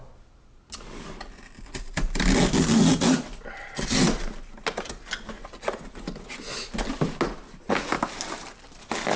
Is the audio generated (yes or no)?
no